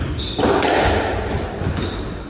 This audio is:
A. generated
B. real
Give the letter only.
B